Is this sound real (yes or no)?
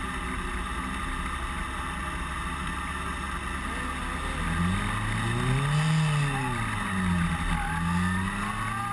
yes